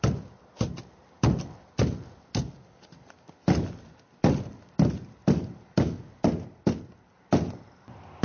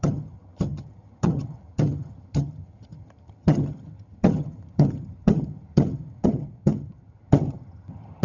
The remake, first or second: second